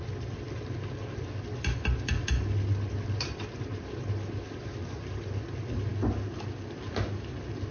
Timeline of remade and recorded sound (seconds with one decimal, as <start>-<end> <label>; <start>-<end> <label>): 0.0-7.7 recorded